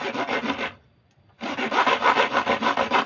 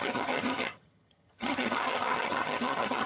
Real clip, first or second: first